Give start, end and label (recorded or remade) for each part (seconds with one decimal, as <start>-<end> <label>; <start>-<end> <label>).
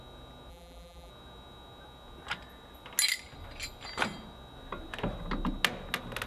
0.0-0.5 recorded; 0.5-1.1 remade; 1.1-6.3 recorded